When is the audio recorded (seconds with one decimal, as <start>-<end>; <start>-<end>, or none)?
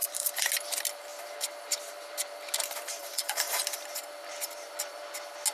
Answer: 0.5-3.0; 3.6-5.5